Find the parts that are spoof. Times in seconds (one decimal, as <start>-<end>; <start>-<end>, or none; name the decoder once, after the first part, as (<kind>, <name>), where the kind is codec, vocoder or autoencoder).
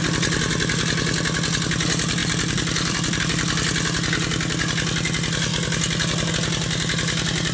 2.2-3.2 (vocoder, BigVGAN v2)